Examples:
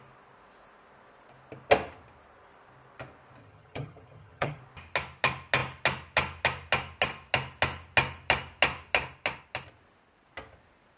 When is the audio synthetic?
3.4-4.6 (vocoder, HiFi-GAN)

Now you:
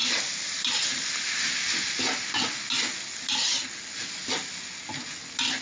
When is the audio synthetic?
none

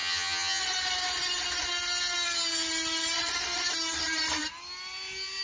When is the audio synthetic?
0.0-0.6 (vocoder, HiFi-GAN)

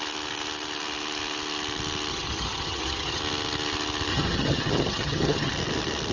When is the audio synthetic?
2.1-3.2 (vocoder, HiFi-GAN); 4.1-5.5

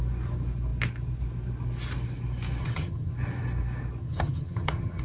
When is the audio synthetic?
2.6-3.1 (vocoder, HiFi-GAN); 4.0-5.0